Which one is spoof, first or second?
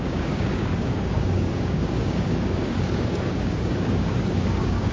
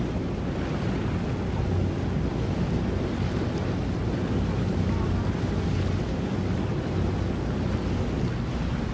first